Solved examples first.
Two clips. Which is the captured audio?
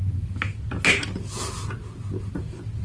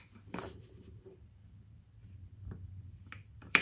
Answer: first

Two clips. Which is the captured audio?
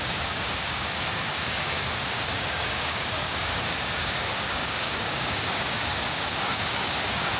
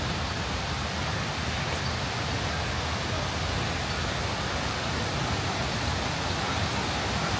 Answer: second